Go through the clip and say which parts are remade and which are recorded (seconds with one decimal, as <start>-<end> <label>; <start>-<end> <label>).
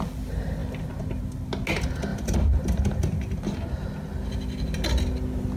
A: 0.0-2.1 recorded; 2.1-2.8 remade; 2.8-5.6 recorded